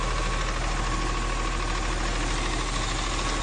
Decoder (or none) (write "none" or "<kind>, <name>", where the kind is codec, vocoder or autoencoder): none